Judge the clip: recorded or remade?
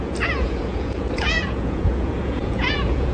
remade